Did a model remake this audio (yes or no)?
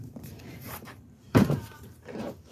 yes